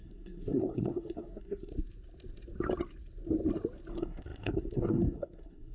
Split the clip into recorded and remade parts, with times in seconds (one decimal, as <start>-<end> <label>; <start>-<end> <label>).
0.0-1.7 remade; 1.7-3.9 recorded; 3.9-5.7 remade